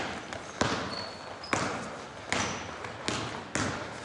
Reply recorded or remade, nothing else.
recorded